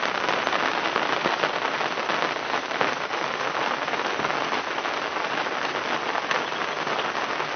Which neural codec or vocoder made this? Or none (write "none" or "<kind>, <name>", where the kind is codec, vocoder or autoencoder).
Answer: none